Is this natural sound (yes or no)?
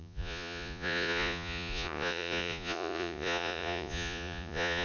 no